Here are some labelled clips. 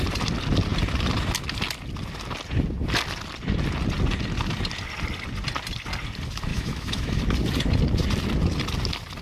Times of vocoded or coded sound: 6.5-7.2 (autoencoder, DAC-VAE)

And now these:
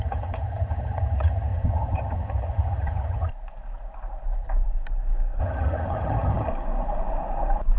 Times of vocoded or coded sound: 0.0-3.3 (vocoder, HiFi-GAN); 5.4-6.5

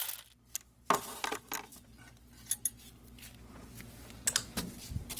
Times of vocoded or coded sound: none

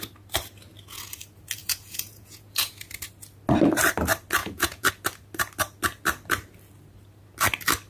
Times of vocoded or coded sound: 1.6-2.7 (vocoder, Vocos); 4.4-4.9